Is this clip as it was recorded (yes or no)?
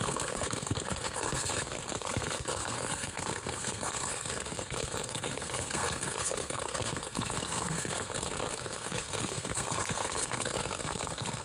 no